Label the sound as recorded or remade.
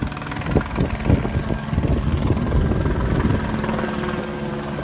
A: recorded